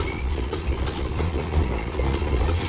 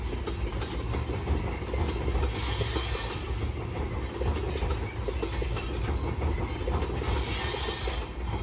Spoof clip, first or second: first